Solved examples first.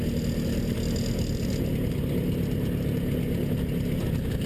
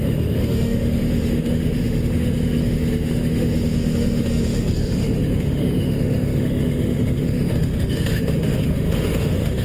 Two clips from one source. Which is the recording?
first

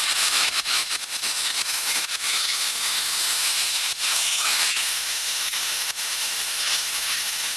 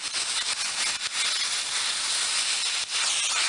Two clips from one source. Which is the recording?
second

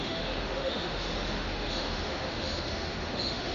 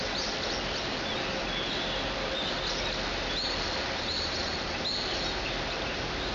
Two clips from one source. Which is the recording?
second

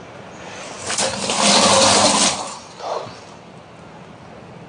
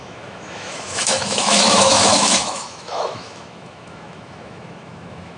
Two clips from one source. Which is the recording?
first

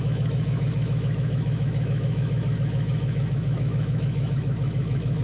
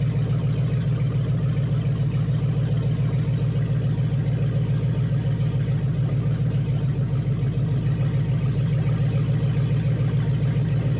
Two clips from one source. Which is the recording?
second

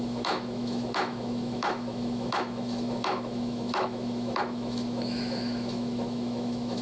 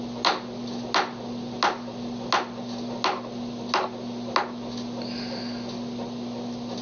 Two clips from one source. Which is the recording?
second